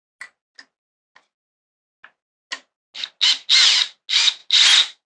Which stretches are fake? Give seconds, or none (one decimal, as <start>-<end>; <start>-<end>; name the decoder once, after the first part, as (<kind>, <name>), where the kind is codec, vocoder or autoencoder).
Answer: none